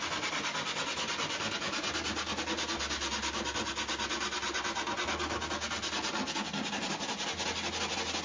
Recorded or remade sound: recorded